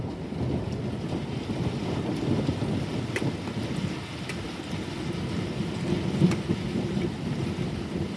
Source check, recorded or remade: recorded